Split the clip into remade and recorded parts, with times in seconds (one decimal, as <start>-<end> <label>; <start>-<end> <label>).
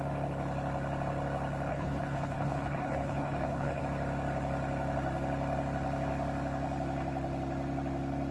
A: 0.0-1.7 recorded; 1.7-3.8 remade; 3.8-8.3 recorded